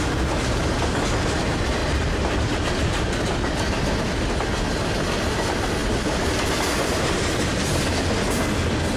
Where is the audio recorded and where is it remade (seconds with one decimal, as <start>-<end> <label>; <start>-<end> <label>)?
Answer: 0.0-1.8 recorded; 1.8-3.0 remade; 3.0-5.8 recorded; 5.8-7.8 remade; 7.8-9.0 recorded